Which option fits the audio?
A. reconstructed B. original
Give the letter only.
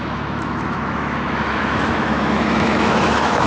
A